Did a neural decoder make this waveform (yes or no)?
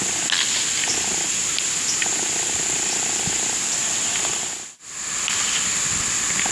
no